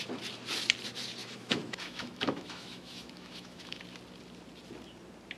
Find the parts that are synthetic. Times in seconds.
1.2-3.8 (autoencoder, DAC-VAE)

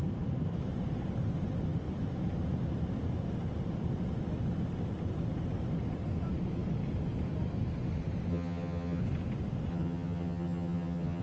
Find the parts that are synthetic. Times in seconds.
8.3-9.0 (vocoder, HiFi-GAN); 9.7-11.2

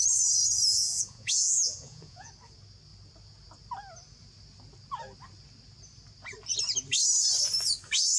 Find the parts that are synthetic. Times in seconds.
0.7-2.3 (vocoder, Vocos)